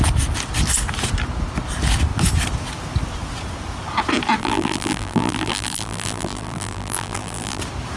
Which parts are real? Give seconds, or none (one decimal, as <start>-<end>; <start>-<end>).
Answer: 0.0-4.4; 7.6-8.0

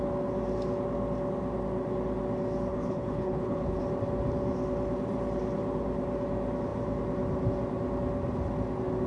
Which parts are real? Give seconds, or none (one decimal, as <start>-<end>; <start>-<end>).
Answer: 0.0-2.7; 3.8-9.1

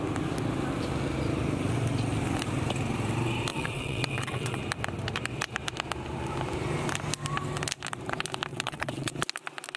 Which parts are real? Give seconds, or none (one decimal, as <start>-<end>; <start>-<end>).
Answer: 0.0-3.5; 4.6-8.5; 9.1-9.8